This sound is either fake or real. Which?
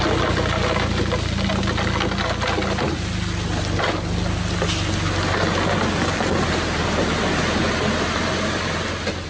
real